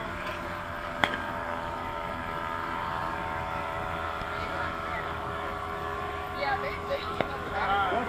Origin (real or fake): fake